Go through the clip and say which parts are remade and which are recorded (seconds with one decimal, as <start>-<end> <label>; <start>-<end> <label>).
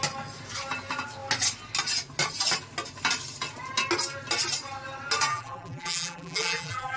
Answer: 0.0-5.3 recorded; 5.3-7.0 remade